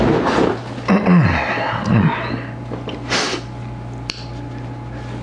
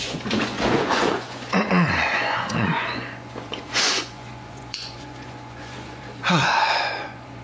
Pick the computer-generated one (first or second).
second